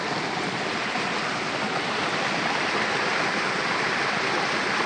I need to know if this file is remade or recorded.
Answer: recorded